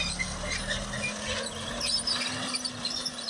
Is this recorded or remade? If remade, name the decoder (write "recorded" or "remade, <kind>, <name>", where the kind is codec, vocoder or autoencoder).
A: recorded